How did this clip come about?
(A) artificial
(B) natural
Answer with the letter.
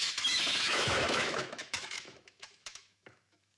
A